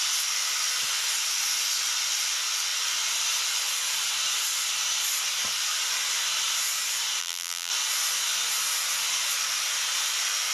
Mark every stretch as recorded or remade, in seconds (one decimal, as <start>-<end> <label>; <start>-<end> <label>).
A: 0.0-7.2 recorded; 7.2-7.7 remade; 7.7-10.5 recorded